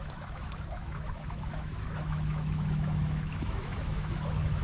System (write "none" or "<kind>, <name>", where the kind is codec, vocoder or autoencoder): autoencoder, DAC-VAE